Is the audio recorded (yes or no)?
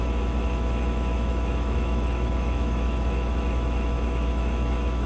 no